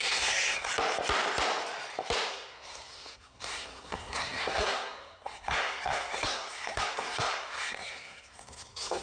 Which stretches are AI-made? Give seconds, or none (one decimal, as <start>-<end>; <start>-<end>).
0.0-0.7; 2.3-9.0